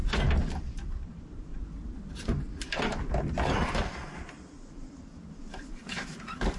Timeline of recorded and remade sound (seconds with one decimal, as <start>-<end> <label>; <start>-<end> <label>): 0.0-1.1 recorded; 1.1-1.5 remade; 1.5-5.5 recorded; 5.5-6.6 remade